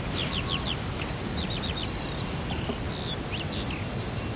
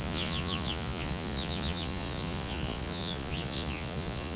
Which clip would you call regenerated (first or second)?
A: second